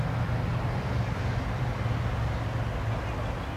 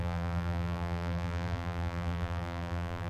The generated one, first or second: second